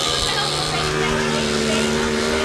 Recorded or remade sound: recorded